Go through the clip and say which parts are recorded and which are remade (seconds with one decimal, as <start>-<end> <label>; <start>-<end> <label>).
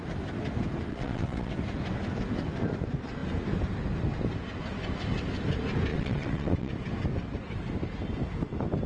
0.0-0.9 recorded; 0.9-1.5 remade; 1.5-5.9 recorded; 5.9-6.7 remade; 6.7-8.9 recorded